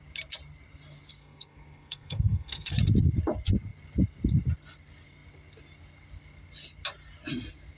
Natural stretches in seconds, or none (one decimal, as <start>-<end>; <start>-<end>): 0.0-1.2; 2.7-7.8